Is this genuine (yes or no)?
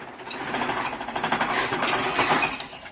yes